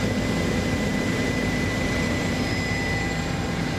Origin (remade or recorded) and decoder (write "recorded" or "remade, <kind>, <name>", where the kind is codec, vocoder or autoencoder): remade, vocoder, BigVGAN v2